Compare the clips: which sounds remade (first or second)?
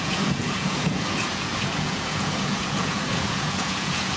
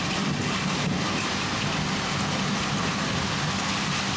first